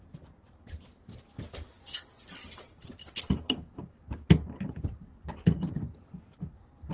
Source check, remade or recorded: recorded